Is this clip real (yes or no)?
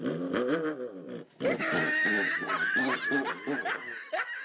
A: yes